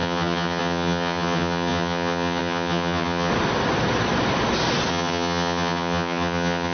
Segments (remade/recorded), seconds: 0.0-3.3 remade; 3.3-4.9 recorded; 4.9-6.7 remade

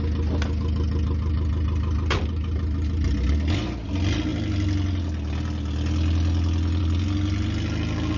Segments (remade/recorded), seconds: 0.0-8.2 recorded

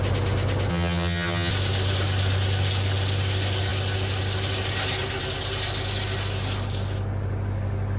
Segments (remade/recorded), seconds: 0.0-0.7 recorded; 0.7-1.5 remade; 1.5-8.0 recorded